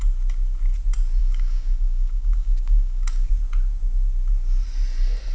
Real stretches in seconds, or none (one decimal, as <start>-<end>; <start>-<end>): 0.0-1.2; 3.3-5.3